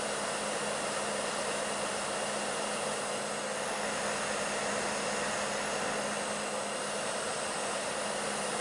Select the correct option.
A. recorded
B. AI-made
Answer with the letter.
A